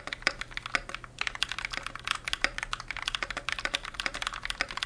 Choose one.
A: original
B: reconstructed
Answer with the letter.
A